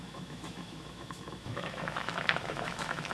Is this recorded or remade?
remade